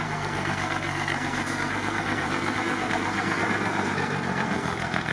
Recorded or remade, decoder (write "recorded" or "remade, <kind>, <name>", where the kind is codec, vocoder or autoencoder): remade, codec, SNAC